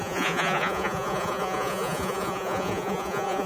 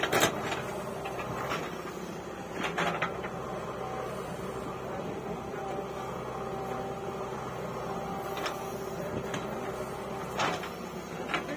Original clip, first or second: second